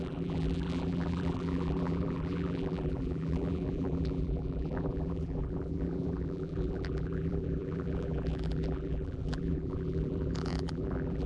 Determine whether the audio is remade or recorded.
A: remade